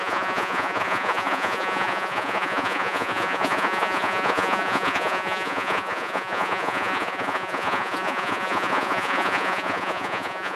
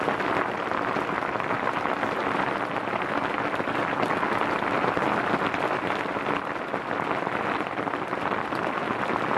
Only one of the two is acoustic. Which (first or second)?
second